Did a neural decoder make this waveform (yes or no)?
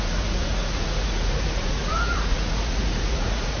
yes